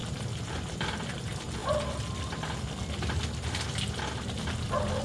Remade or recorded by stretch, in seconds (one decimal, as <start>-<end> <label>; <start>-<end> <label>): 0.0-5.0 recorded